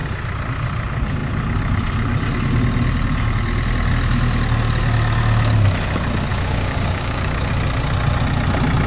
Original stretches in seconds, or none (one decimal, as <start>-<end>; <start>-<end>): 0.0-6.3; 7.5-8.9